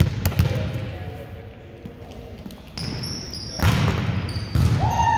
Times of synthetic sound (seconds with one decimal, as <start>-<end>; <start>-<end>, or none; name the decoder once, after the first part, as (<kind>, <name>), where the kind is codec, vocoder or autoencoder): none